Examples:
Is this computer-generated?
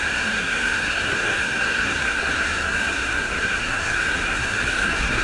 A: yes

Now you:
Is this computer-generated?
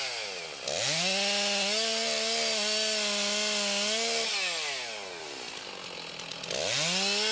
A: no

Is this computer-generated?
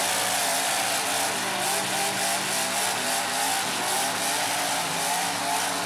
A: no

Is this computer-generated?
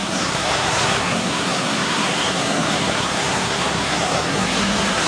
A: yes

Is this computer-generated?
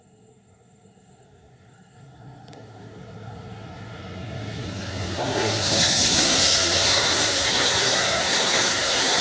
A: yes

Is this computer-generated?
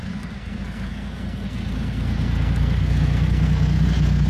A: yes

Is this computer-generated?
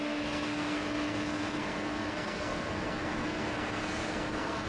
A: yes